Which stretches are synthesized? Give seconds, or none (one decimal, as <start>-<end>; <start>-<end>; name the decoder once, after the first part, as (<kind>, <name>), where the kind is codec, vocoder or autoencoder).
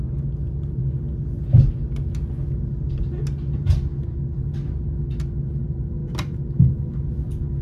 none